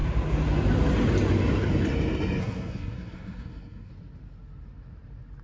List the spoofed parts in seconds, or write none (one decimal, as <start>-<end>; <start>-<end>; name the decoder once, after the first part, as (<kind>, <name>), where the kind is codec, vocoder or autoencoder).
2.4-3.9 (codec, SNAC)